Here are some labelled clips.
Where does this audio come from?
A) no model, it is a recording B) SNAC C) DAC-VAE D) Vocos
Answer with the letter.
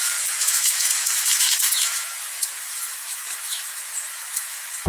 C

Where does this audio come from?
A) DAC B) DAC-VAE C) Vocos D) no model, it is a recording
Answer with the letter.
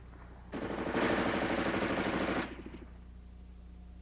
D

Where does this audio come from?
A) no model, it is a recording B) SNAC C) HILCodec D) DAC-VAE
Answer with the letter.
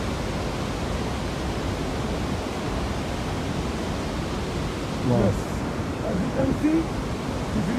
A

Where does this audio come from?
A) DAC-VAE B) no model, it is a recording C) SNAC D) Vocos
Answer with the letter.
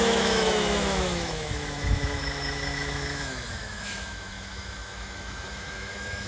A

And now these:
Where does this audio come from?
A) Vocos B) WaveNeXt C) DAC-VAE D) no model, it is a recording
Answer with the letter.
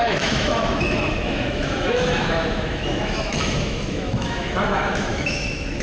C